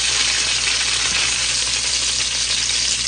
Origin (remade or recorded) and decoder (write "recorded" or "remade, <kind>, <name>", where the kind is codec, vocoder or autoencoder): recorded